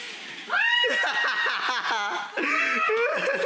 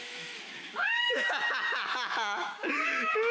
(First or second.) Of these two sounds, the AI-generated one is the second